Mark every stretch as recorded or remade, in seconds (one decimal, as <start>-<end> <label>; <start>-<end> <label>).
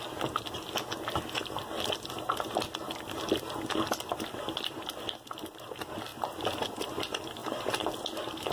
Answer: 0.0-8.5 recorded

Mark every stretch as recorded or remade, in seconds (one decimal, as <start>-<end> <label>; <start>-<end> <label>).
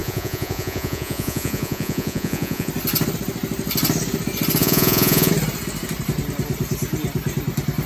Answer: 0.0-2.7 remade; 2.7-4.6 recorded; 4.6-5.3 remade; 5.3-7.9 recorded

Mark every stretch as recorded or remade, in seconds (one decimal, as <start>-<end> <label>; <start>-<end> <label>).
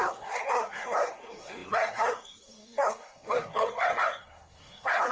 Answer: 0.0-5.1 remade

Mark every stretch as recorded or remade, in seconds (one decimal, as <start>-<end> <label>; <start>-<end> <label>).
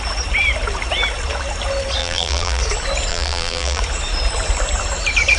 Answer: 0.0-2.0 recorded; 2.0-2.6 remade; 2.6-3.1 recorded; 3.1-3.8 remade; 3.8-5.4 recorded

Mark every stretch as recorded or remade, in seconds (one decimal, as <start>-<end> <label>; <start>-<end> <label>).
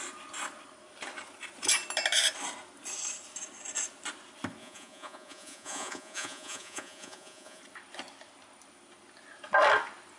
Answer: 0.0-4.6 recorded; 4.6-7.6 remade; 7.6-10.2 recorded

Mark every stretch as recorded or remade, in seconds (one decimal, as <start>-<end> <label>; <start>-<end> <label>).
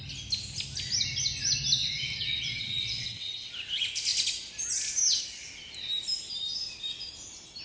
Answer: 0.0-1.8 recorded; 1.8-3.5 remade; 3.5-7.6 recorded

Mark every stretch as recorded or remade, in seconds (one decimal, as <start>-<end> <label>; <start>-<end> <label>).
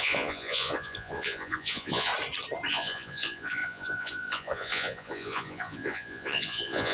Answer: 0.0-2.1 remade; 2.1-2.7 recorded; 2.7-6.9 remade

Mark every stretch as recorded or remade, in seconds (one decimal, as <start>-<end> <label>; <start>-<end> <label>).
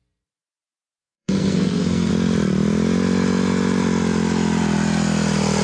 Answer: 0.0-1.0 recorded; 1.0-2.1 remade; 2.1-5.6 recorded